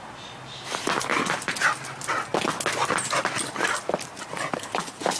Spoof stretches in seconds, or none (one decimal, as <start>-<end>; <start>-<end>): 0.0-1.1; 4.2-5.2